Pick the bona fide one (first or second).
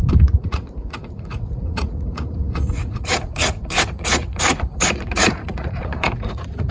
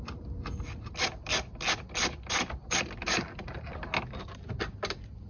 second